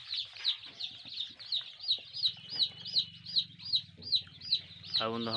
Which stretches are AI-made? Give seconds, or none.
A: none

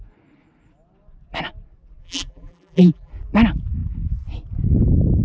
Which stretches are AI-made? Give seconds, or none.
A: 2.0-3.1 (vocoder, BigVGAN v2)

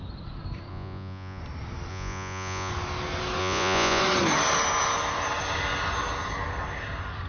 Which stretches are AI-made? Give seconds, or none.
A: 0.7-1.4 (vocoder, Vocos); 1.9-2.7; 3.4-4.0